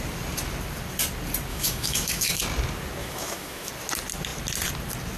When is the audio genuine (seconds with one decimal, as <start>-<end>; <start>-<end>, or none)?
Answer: 0.0-1.5; 2.4-3.0; 3.7-5.2